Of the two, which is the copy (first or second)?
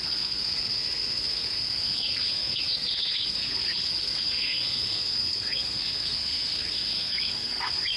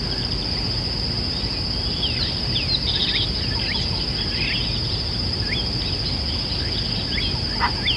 first